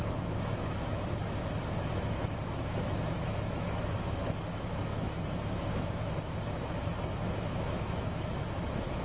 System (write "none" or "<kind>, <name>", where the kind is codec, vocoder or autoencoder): autoencoder, DAC-VAE